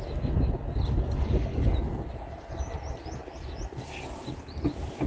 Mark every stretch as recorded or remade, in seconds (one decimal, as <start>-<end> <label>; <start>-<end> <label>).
0.0-5.1 recorded